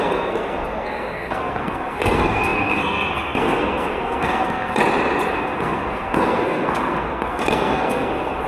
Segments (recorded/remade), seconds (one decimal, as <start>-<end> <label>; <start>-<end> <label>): 0.0-4.8 remade; 4.8-5.3 recorded; 5.3-8.5 remade